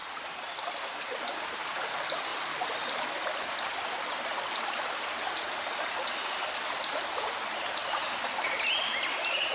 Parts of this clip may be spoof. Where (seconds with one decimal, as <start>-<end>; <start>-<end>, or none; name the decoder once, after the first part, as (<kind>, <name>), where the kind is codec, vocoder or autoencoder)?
none